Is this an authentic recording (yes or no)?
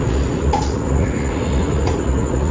no